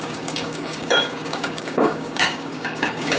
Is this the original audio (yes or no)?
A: no